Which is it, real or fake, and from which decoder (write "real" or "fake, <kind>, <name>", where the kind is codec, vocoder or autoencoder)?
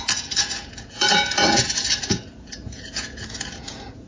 fake, vocoder, Vocos